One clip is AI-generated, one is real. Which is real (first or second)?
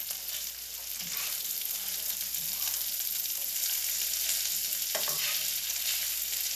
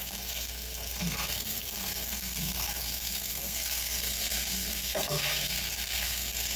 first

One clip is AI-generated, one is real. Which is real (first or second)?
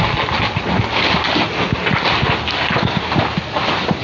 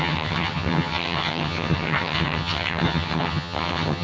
first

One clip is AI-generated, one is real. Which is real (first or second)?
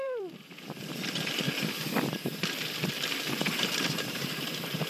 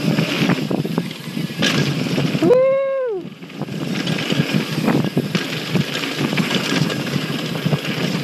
second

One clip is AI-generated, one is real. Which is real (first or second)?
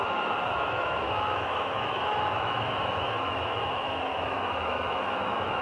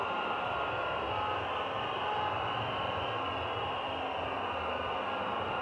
second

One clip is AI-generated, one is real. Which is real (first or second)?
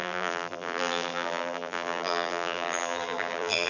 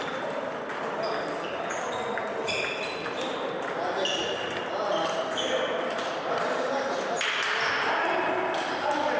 second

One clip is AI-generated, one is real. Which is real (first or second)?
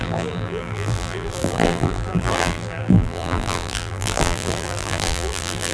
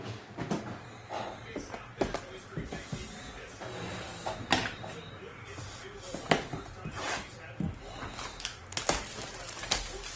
second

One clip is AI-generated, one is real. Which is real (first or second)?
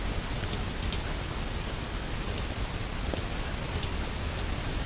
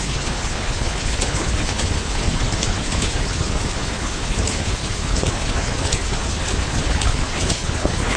first